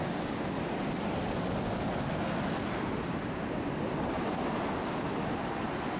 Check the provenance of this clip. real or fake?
real